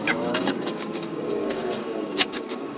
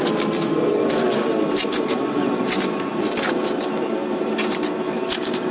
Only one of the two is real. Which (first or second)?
second